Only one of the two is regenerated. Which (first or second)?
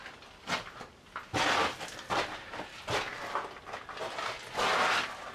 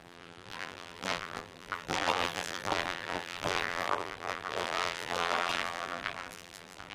second